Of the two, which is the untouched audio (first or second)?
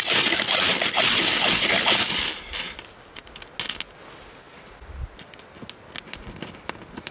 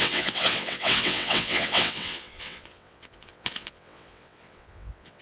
first